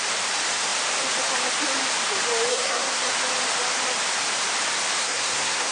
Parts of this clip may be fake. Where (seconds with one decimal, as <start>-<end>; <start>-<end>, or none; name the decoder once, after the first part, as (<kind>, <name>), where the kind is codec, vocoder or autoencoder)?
2.5-3.1 (codec, SNAC); 5.0-5.7